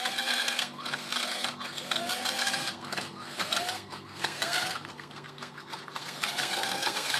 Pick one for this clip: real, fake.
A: fake